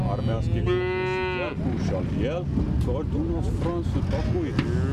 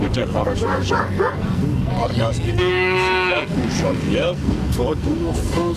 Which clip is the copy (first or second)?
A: second